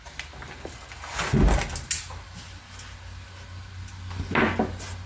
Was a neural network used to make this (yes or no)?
no